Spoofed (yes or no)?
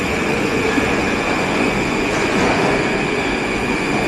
yes